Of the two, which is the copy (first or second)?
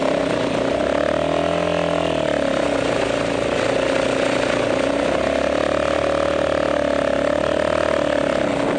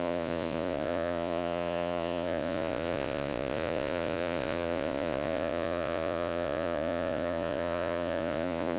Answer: second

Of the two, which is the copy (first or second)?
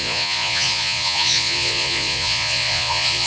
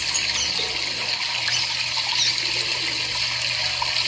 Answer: first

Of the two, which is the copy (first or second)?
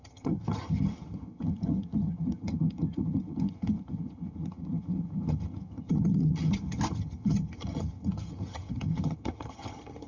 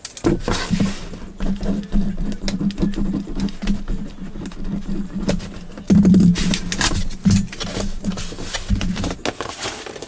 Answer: first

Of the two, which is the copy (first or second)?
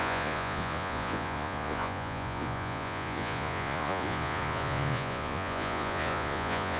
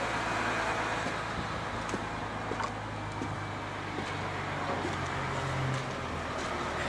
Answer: first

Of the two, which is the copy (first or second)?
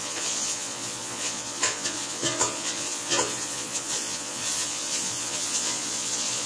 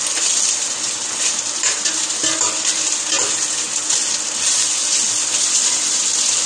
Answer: first